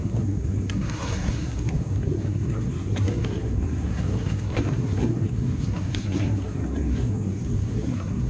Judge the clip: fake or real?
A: fake